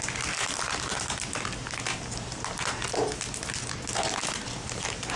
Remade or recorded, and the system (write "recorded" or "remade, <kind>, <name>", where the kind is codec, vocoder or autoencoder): recorded